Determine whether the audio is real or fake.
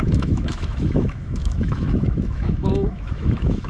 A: fake